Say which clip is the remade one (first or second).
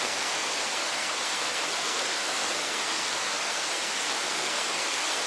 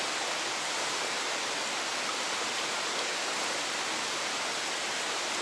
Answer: first